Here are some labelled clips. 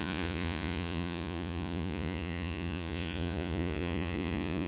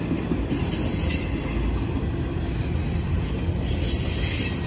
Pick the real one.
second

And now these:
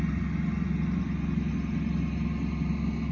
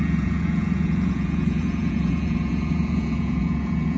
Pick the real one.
first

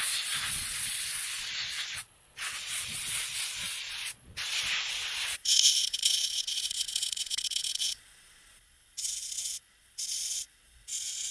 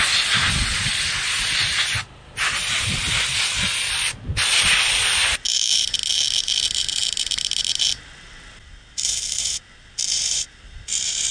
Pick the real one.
second